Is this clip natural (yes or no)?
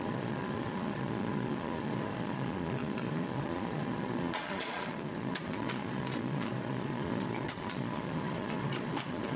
no